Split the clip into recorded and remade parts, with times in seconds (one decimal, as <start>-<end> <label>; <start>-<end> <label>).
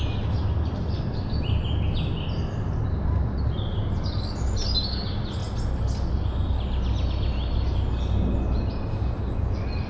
0.0-9.9 recorded